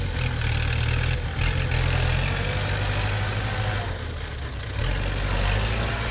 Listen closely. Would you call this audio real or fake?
real